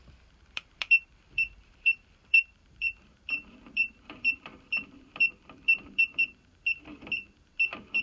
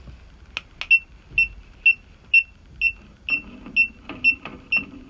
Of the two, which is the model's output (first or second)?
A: first